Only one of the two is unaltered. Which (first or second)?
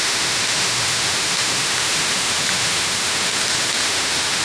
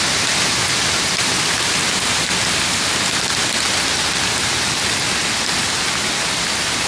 second